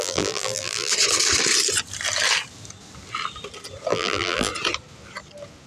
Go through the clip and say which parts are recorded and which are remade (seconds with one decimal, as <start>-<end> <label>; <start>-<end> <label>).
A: 0.0-0.9 remade; 0.9-3.9 recorded; 3.9-4.5 remade; 4.5-5.7 recorded